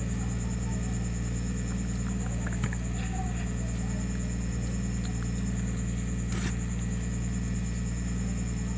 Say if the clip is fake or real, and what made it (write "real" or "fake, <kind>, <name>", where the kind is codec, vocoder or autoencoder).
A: real